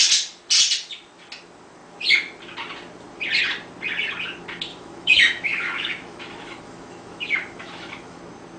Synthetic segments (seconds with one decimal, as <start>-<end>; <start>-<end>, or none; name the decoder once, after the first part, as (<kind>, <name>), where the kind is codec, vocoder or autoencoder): 4.7-8.2 (autoencoder, DAC-VAE)